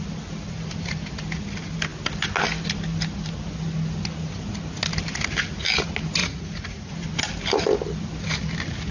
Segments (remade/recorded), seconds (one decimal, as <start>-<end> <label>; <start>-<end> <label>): 0.0-6.2 recorded; 6.2-6.9 remade; 6.9-8.9 recorded

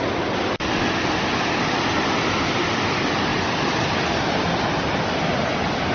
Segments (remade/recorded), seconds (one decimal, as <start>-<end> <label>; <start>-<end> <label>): 0.0-5.9 recorded